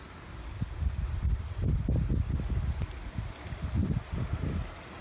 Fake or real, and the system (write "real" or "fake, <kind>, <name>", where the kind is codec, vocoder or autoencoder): real